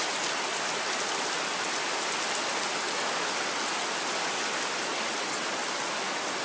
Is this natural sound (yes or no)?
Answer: yes